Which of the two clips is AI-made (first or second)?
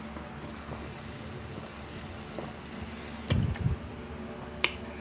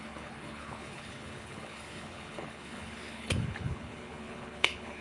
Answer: second